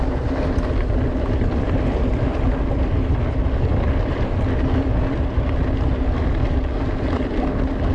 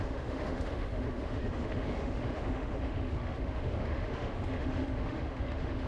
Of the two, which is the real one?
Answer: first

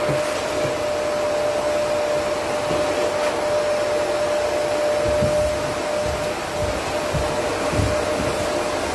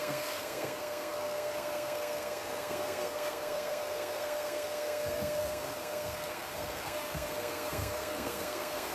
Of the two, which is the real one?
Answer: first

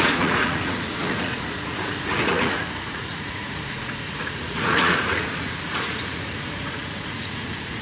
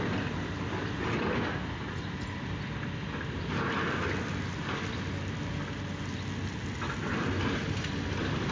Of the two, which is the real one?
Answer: second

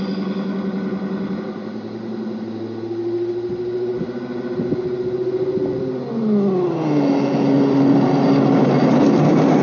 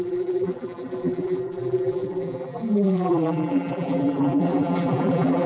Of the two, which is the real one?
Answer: first